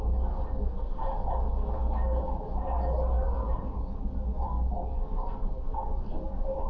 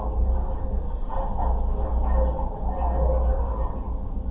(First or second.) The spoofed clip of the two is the first